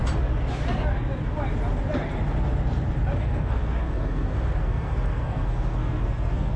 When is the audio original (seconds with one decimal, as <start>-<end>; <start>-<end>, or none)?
0.0-3.2